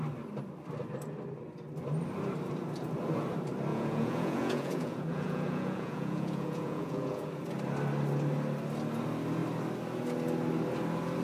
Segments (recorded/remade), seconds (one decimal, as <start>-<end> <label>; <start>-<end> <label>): 0.0-3.7 recorded; 3.7-7.3 remade; 7.3-11.2 recorded

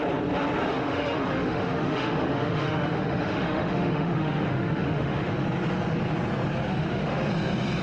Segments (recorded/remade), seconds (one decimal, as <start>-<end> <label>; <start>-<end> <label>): 0.0-0.6 recorded; 0.6-5.3 remade; 5.3-6.7 recorded; 6.7-7.3 remade; 7.3-7.8 recorded

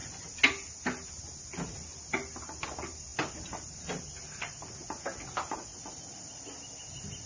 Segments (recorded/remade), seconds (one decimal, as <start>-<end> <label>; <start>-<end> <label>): 0.0-7.3 recorded

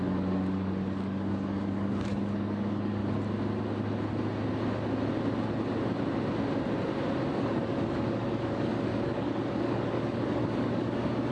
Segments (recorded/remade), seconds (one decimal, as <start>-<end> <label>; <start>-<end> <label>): 0.0-3.0 remade; 3.0-7.3 recorded; 7.3-11.3 remade

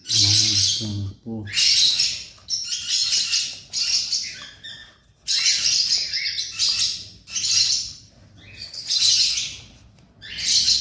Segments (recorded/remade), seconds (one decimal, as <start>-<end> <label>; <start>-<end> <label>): 0.0-10.8 recorded